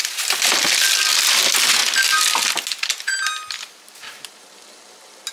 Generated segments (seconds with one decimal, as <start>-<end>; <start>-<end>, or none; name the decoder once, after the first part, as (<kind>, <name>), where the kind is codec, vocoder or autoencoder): none